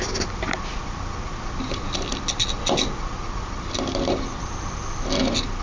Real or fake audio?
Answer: real